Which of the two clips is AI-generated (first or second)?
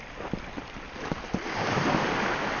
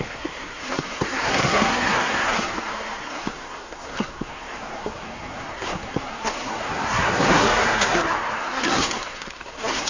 second